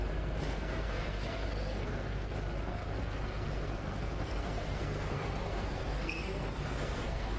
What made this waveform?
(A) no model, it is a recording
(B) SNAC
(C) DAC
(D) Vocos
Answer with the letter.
B